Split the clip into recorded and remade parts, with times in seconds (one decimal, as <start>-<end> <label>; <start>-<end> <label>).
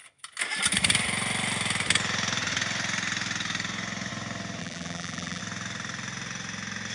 0.0-4.6 recorded; 4.6-5.4 remade; 5.4-6.9 recorded